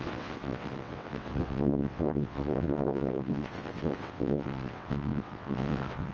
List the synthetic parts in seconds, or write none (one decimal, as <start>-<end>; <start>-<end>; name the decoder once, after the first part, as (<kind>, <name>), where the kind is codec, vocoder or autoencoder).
0.0-6.1 (vocoder, WaveNeXt)